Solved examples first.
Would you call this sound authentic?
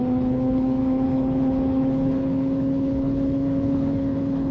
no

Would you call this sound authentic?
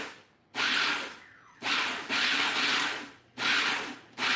yes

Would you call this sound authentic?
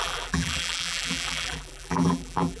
no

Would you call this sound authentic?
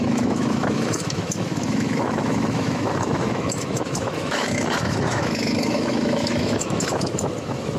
no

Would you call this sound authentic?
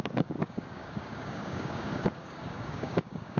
no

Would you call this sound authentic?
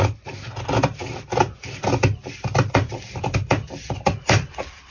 no